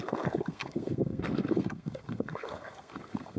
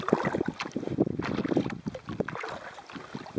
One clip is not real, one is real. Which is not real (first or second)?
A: first